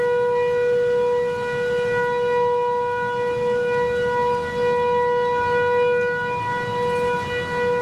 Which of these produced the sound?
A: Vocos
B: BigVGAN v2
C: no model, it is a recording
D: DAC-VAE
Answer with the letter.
C